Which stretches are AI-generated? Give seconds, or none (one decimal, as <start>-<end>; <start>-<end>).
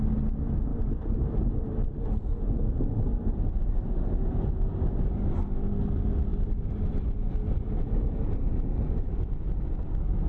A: 0.7-4.5; 6.3-9.3